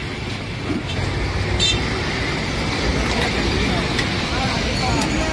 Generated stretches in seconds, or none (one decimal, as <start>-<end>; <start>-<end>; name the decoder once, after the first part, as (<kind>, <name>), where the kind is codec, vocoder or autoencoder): 0.0-0.6 (vocoder, BigVGAN v2); 2.9-4.8